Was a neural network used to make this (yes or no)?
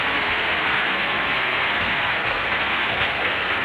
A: yes